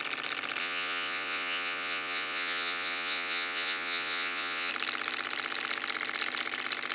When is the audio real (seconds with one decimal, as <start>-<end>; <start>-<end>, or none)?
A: 0.0-0.6; 4.7-6.9